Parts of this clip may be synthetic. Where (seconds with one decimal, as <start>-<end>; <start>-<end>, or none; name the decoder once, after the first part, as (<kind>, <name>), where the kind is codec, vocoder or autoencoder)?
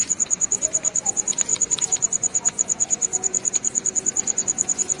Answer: 0.0-5.0 (vocoder, Vocos)